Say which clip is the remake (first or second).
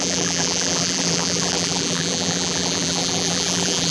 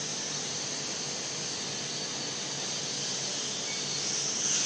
first